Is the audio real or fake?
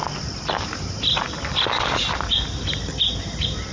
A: real